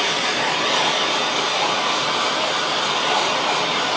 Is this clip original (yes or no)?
yes